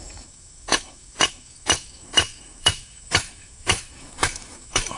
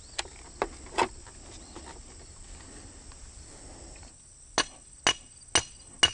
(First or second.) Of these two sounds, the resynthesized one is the first